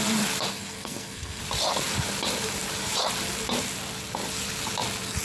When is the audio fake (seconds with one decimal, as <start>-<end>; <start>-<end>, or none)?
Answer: 0.5-1.4